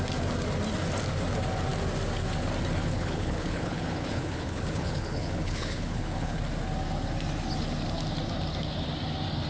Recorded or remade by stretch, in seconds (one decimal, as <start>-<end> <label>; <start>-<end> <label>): 0.0-2.9 recorded; 2.9-6.4 remade; 6.4-9.5 recorded